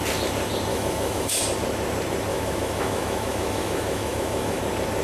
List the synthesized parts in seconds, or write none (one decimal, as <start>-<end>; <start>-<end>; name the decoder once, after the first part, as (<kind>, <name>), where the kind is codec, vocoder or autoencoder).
0.7-1.4 (autoencoder, DAC-VAE); 2.3-4.6